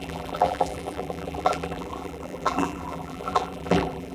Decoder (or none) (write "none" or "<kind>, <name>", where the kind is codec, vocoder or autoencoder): vocoder, BigVGAN v2